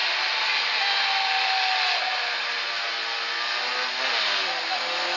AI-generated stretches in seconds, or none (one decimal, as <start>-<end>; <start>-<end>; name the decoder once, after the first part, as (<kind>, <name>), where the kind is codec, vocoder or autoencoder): none